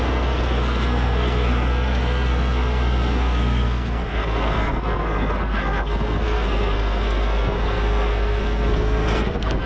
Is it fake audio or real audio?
fake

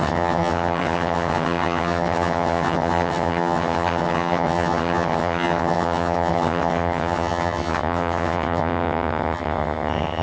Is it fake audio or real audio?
fake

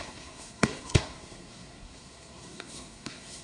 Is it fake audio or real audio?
fake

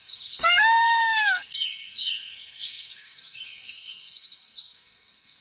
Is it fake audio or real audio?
fake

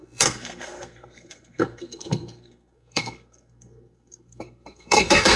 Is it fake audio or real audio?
fake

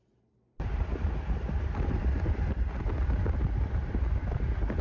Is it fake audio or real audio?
fake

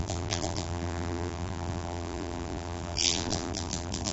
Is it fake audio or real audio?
fake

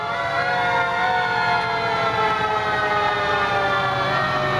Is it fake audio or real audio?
real